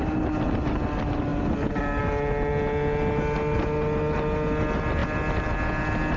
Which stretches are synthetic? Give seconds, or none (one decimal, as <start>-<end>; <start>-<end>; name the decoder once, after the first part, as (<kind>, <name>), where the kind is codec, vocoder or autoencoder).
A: none